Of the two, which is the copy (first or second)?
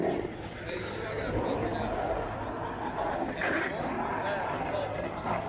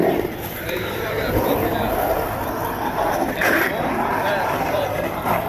second